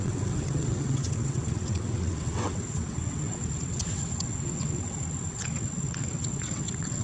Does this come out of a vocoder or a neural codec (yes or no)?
yes